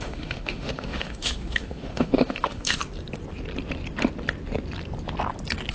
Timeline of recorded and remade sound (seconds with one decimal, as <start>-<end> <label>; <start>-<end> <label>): 0.0-2.8 remade; 2.8-5.7 recorded